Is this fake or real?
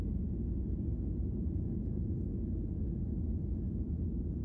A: real